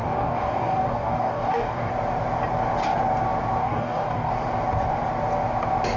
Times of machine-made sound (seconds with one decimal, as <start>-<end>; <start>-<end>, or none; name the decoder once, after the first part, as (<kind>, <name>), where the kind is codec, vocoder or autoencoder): 0.0-1.9 (codec, DAC); 3.6-4.3